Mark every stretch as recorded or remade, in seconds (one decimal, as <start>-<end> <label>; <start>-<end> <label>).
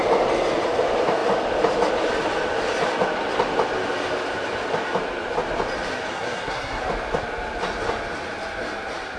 0.0-6.1 recorded; 6.1-6.8 remade; 6.8-9.2 recorded